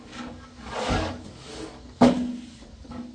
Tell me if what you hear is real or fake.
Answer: fake